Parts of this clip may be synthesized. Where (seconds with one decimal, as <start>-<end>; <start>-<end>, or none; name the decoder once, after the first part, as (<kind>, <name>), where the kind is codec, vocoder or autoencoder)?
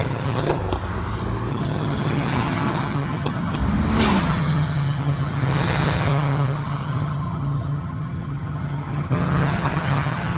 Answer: 0.0-0.6 (vocoder, HiFi-GAN); 1.5-3.6; 4.2-10.4